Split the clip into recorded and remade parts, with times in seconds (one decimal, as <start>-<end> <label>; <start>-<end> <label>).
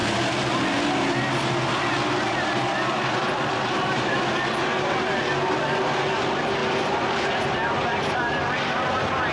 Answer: 0.0-2.7 recorded; 2.7-3.6 remade; 3.6-6.6 recorded; 6.6-9.3 remade